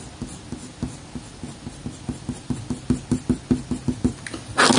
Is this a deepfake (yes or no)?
no